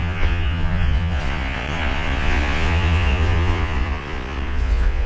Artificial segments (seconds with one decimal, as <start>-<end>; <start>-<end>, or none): 0.0-5.1